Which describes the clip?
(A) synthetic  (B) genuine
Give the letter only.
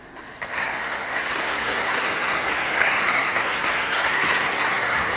A